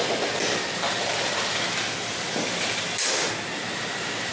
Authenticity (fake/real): real